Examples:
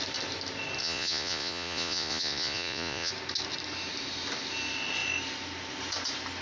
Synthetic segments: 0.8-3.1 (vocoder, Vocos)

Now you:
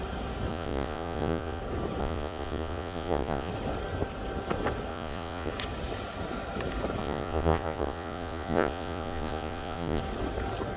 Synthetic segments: 0.5-1.6 (vocoder, Vocos); 2.0-3.5; 4.9-5.5; 7.0-10.0

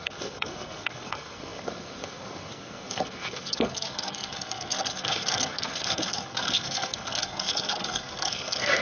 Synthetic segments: 0.0-8.8 (codec, SNAC)

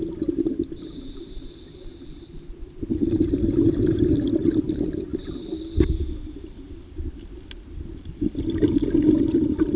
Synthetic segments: 0.5-2.8 (vocoder, BigVGAN v2)

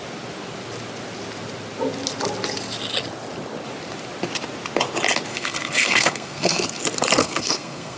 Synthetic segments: 5.3-6.8 (codec, SNAC); 7.2-8.0

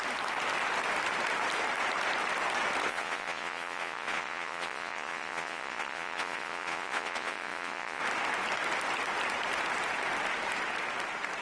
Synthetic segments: 2.9-8.0 (vocoder, Vocos)